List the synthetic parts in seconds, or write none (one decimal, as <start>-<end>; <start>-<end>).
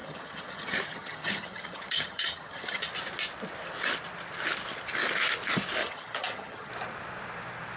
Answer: 0.0-2.8; 5.8-6.7